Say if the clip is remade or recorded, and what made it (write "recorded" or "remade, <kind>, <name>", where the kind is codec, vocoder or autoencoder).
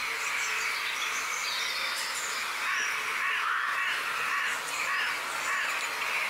recorded